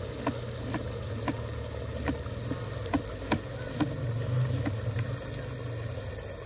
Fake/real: real